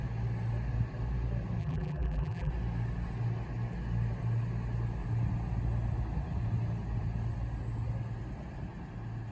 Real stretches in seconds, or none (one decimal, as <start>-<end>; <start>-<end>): 0.0-1.6; 2.5-9.3